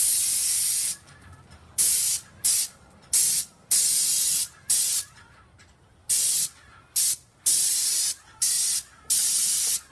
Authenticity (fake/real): real